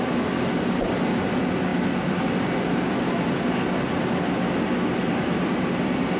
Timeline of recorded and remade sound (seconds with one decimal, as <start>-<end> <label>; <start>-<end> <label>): 0.0-6.2 recorded